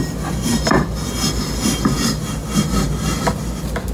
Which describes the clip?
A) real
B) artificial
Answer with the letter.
A